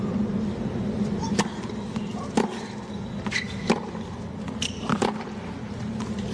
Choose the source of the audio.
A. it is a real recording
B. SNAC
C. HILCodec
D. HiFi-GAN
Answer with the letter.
A